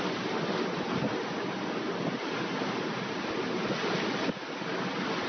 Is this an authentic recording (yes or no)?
yes